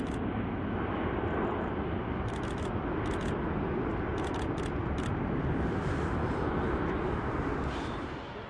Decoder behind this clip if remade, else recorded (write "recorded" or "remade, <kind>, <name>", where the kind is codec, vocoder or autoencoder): recorded